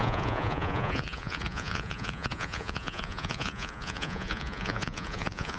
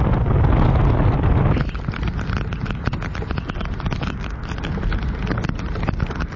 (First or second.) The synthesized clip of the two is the first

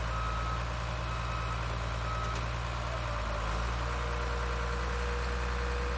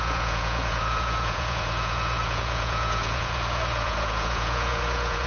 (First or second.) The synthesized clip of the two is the second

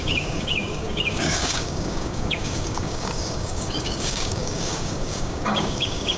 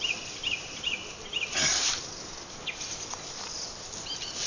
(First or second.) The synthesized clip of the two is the first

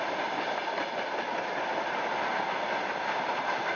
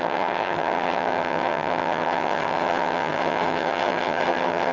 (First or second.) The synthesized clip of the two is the second